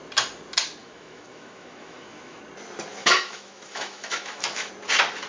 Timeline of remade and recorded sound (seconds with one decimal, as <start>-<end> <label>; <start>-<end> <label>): 0.0-0.8 recorded; 0.8-2.4 remade; 2.4-3.0 recorded; 3.0-4.7 remade; 4.7-5.3 recorded